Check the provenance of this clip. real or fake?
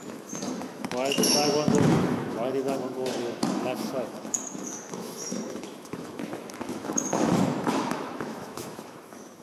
fake